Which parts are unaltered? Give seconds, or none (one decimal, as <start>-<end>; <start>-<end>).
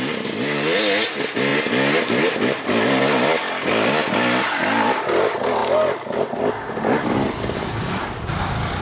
0.0-8.8